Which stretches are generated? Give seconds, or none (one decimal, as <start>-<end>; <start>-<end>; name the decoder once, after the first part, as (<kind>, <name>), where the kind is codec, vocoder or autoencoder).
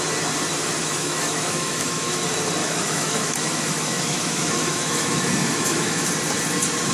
0.8-2.2 (autoencoder, DAC-VAE); 2.6-6.1